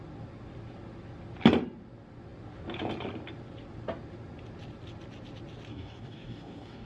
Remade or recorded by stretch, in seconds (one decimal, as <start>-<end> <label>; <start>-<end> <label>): 0.0-5.7 recorded; 5.7-6.9 remade